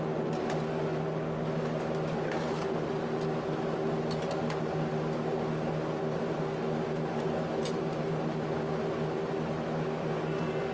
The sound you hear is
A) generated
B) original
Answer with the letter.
B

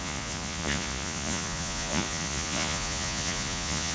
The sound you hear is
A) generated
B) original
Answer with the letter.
A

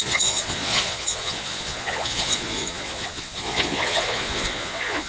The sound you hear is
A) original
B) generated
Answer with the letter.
B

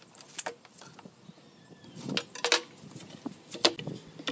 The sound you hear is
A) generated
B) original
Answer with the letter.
B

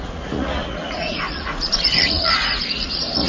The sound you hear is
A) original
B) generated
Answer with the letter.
B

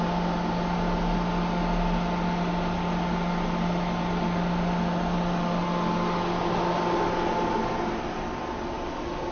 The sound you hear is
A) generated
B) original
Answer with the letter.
B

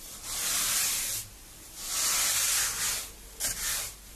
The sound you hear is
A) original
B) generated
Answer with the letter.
A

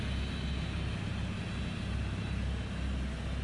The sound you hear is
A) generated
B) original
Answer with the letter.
B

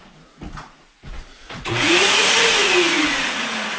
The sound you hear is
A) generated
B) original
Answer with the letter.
A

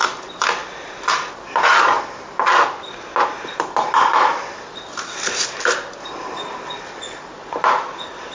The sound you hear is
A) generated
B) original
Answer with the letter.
B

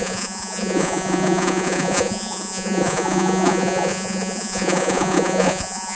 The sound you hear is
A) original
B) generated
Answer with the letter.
B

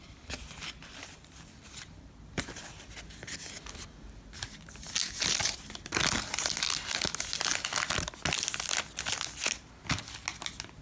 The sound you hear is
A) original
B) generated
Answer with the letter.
A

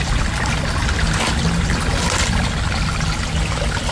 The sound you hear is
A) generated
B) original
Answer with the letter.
B